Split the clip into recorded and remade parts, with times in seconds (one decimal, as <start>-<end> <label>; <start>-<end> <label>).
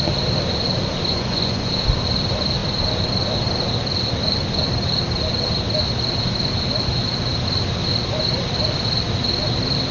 0.0-1.1 recorded; 1.1-1.7 remade; 1.7-9.9 recorded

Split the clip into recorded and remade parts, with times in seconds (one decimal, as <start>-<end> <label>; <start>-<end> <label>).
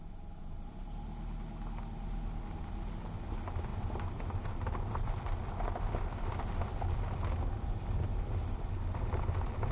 0.0-9.7 recorded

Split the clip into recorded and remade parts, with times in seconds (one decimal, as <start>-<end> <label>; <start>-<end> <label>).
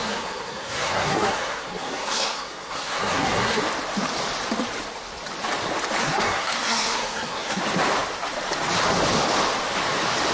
0.0-3.6 remade; 3.6-6.0 recorded; 6.0-7.6 remade; 7.6-10.3 recorded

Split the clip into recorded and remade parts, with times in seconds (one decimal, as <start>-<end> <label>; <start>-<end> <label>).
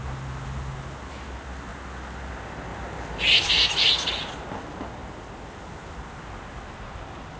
0.0-7.4 recorded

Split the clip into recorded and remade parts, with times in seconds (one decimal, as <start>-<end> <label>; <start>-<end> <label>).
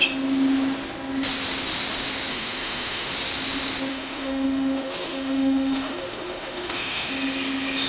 0.0-2.3 recorded; 2.3-3.1 remade; 3.1-3.9 recorded; 3.9-7.1 remade; 7.1-7.9 recorded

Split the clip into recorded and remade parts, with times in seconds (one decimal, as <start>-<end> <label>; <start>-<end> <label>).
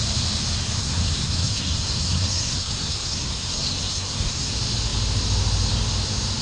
0.0-0.8 recorded; 0.8-4.5 remade; 4.5-6.4 recorded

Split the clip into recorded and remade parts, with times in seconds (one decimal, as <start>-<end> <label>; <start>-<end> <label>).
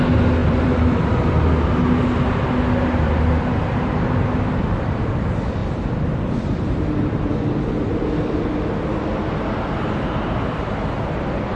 0.0-0.4 recorded; 0.4-1.3 remade; 1.3-5.6 recorded; 5.6-7.3 remade; 7.3-11.5 recorded